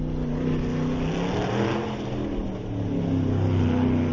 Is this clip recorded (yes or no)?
yes